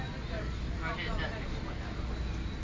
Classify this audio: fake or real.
real